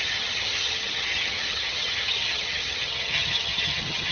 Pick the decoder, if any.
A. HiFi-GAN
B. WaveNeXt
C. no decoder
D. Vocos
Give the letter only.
A